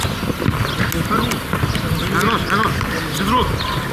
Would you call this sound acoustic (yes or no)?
yes